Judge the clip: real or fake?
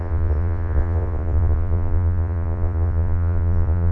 fake